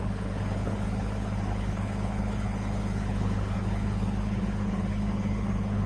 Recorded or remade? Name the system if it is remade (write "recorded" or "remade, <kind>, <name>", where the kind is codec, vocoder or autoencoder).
remade, codec, HILCodec